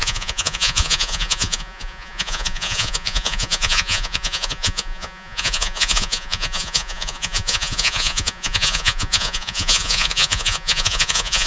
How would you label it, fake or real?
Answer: fake